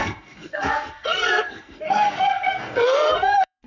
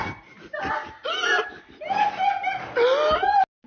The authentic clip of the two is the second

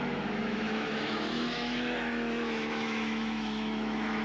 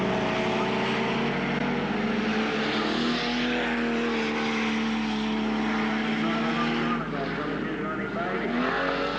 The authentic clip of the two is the second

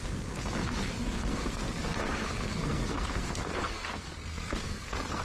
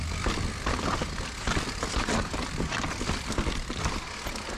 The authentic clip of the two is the second